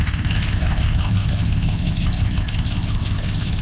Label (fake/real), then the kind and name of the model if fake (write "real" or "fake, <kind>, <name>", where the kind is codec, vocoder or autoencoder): fake, codec, ZipCodec